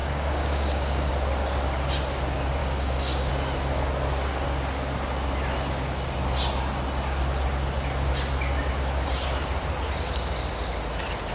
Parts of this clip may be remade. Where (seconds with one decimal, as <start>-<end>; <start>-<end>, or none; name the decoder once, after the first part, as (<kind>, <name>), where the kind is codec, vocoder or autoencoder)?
0.0-1.1 (codec, DAC); 2.6-3.3